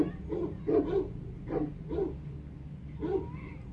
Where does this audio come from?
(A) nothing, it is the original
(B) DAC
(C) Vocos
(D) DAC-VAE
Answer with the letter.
A